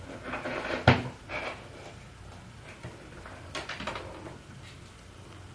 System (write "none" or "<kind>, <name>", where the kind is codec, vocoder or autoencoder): none